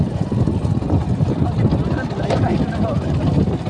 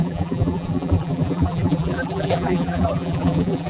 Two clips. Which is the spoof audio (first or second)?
second